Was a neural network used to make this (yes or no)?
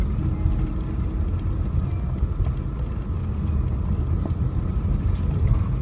no